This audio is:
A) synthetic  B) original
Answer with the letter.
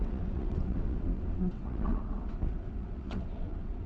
A